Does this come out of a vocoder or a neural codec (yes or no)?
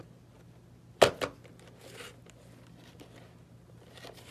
no